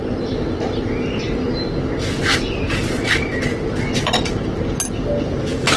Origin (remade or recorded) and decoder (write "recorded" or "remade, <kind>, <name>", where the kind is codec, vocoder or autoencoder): recorded